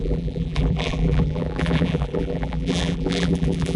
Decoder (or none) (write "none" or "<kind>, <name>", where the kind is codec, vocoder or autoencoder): vocoder, BigVGAN v2